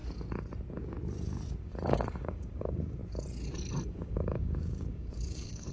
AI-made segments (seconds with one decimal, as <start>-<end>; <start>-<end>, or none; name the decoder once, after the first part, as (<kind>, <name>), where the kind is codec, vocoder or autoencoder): 1.6-3.0 (codec, DAC); 3.9-5.7